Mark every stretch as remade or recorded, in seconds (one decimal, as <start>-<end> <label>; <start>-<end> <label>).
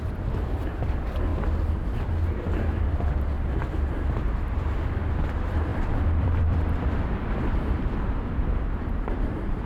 0.0-1.3 remade; 1.3-4.4 recorded; 4.4-9.7 remade